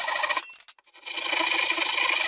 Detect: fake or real real